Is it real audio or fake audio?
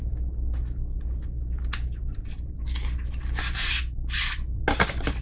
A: real